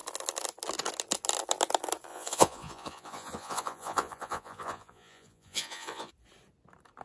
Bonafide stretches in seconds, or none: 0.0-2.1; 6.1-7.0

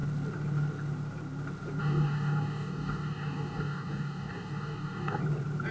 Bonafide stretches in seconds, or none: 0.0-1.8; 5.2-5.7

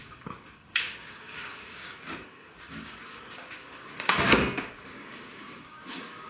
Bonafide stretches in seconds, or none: none